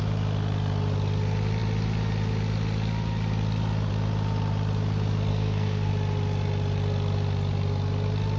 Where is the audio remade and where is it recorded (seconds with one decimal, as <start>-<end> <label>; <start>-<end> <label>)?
0.0-5.3 recorded; 5.3-5.9 remade; 5.9-8.4 recorded